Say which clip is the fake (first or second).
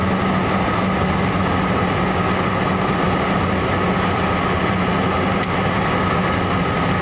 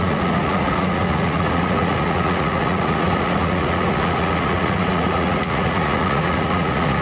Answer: second